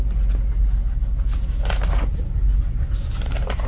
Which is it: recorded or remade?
recorded